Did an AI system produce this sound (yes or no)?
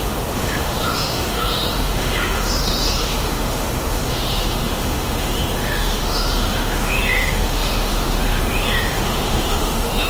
yes